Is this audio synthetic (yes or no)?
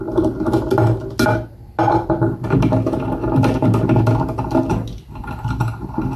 no